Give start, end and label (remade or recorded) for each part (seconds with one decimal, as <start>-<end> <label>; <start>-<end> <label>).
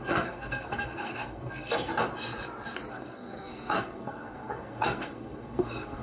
0.0-1.9 remade; 1.9-2.9 recorded; 2.9-6.0 remade